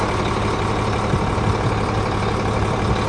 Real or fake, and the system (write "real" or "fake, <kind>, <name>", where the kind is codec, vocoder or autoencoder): real